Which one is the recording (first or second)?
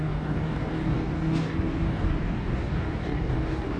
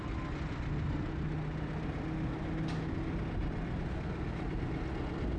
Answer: second